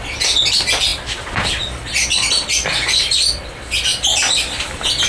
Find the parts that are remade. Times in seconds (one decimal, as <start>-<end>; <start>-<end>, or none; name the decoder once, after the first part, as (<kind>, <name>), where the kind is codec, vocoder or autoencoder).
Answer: 0.0-5.1 (vocoder, BigVGAN v2)